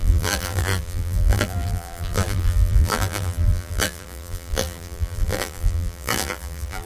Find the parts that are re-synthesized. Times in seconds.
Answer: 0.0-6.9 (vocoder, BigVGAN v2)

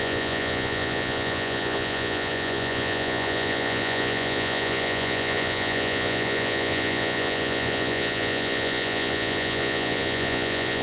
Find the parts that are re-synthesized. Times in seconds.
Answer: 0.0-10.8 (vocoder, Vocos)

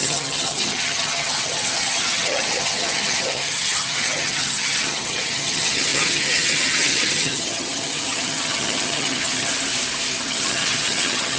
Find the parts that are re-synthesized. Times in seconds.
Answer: 0.0-9.5 (vocoder, HiFi-GAN); 10.2-11.4

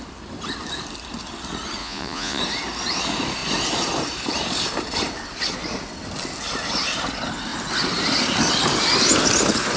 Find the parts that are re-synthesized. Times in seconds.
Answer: 1.8-2.4 (vocoder, Vocos)

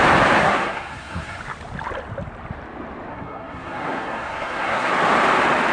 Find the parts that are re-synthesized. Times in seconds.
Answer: 0.4-1.4 (codec, SNAC); 3.1-4.9

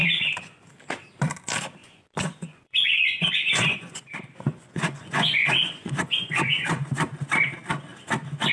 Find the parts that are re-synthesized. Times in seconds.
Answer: 0.0-0.7 (vocoder, Vocos); 1.8-6.9

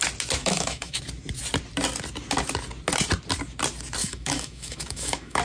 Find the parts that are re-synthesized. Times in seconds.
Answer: 0.4-1.0 (autoencoder, DAC-VAE); 4.0-5.4